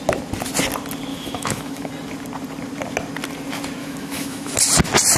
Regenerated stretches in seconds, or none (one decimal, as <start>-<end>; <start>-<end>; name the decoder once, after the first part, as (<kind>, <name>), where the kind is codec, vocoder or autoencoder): 1.1-1.9 (autoencoder, DAC-VAE); 3.8-4.5

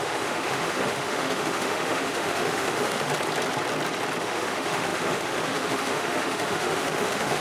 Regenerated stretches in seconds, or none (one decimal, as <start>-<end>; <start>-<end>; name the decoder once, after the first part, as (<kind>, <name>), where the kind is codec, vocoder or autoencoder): 0.0-3.1 (autoencoder, DAC-VAE); 4.2-7.4

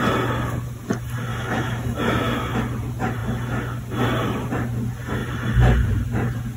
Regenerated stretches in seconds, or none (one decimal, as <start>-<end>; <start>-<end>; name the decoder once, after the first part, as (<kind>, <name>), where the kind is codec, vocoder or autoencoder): 1.3-2.6 (autoencoder, DAC-VAE)

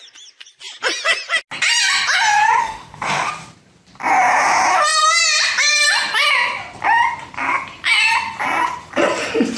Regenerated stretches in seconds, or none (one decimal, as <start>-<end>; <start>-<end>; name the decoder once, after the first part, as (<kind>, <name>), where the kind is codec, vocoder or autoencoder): 2.6-3.3 (autoencoder, DAC-VAE)

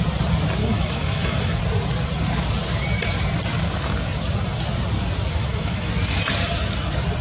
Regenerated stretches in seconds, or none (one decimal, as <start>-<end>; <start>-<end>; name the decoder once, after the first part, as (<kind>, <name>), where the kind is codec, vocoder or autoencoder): 0.6-1.6 (autoencoder, DAC-VAE); 5.4-5.9

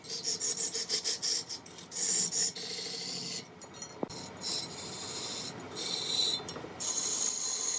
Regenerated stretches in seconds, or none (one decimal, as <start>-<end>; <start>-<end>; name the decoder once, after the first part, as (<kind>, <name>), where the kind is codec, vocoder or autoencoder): none

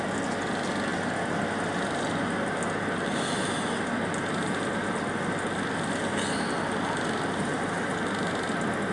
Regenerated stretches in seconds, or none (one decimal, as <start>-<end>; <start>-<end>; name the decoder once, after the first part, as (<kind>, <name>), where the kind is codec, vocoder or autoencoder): none

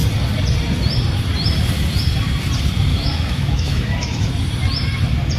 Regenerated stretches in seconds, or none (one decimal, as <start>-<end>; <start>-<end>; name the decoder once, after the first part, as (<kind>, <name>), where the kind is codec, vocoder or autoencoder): 2.9-4.3 (autoencoder, DAC-VAE)